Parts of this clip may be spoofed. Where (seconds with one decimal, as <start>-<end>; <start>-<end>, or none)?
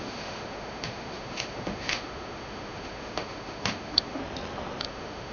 0.0-4.2; 4.8-5.3